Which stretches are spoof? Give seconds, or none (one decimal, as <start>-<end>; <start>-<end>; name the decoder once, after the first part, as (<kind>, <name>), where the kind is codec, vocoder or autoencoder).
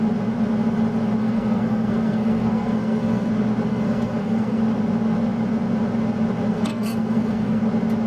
1.2-3.3 (codec, SNAC); 3.7-4.6; 6.5-7.6